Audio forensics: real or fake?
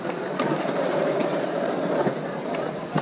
real